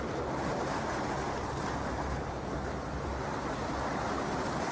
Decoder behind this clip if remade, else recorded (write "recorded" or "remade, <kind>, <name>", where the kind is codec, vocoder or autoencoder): recorded